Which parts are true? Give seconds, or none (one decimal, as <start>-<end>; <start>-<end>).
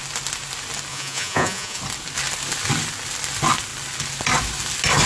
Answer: 0.0-0.9; 1.8-5.1